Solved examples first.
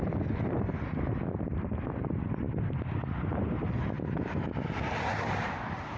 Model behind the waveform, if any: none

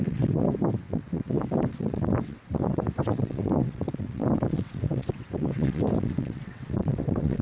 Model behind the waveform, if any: vocoder, WaveNeXt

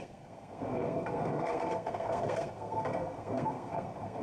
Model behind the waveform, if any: codec, SNAC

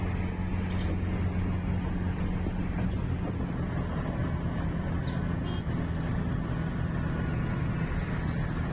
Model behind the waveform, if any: none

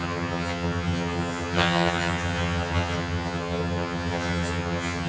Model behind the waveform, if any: vocoder, HiFi-GAN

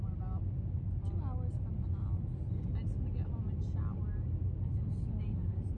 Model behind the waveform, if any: none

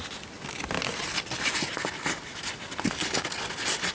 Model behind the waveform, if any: none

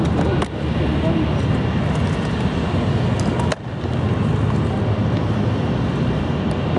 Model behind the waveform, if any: none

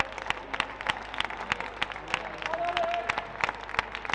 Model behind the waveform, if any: none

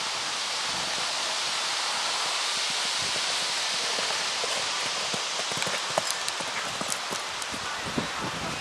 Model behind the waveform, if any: none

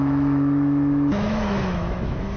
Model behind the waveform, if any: autoencoder, DAC-VAE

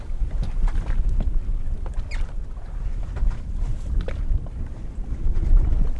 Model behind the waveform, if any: none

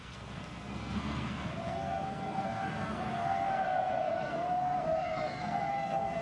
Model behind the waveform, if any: codec, SNAC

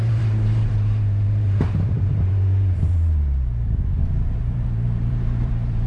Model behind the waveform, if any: vocoder, BigVGAN v2